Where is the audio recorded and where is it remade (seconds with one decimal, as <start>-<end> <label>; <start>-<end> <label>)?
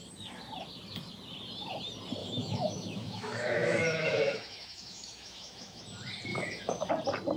0.0-2.2 recorded; 2.2-5.8 remade; 5.8-6.3 recorded; 6.3-6.9 remade; 6.9-7.4 recorded